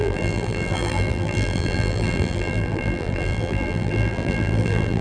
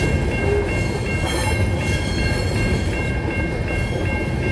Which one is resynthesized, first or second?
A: first